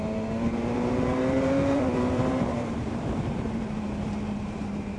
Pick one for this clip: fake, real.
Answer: fake